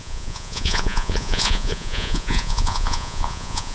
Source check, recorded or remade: remade